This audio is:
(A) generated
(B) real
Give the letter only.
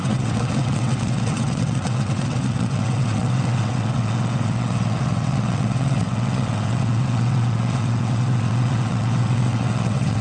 A